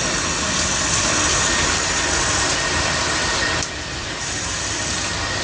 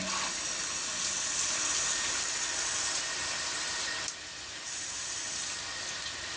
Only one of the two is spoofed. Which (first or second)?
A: first